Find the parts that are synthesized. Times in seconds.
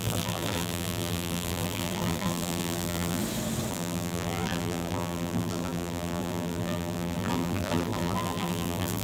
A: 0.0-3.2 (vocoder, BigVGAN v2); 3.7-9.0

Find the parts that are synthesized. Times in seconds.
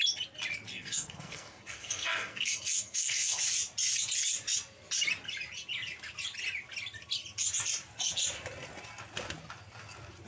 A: 0.7-3.4 (codec, SNAC)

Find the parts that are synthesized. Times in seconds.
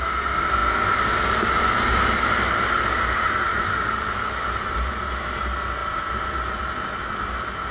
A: 3.5-5.2 (vocoder, BigVGAN v2); 5.8-6.6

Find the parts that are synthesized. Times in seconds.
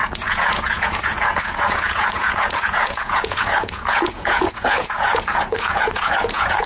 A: 0.0-6.7 (vocoder, Vocos)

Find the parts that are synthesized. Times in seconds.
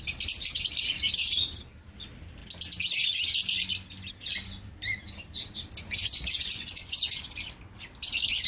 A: 5.8-7.3 (vocoder, Vocos)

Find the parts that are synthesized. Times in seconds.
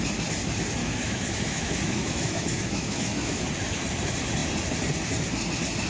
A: 0.8-3.5 (autoencoder, DAC-VAE)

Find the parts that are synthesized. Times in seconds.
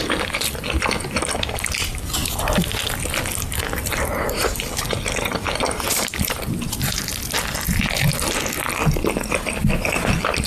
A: 4.5-7.1 (vocoder, BigVGAN v2)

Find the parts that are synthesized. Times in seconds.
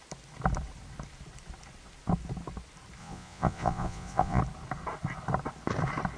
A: 3.0-4.4 (vocoder, Vocos)